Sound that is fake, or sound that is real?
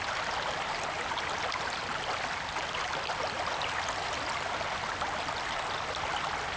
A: real